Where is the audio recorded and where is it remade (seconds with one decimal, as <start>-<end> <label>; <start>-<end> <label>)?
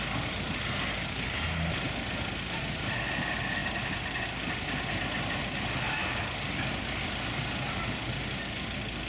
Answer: 0.0-9.1 recorded